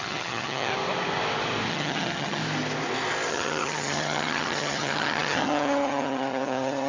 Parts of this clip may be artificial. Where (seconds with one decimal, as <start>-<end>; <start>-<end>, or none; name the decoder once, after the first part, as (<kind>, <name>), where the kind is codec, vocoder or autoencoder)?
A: 0.0-0.7 (vocoder, HiFi-GAN); 1.7-2.4; 3.3-6.9